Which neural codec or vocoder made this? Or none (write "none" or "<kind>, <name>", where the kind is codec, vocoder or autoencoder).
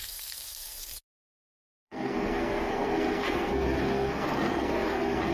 codec, SNAC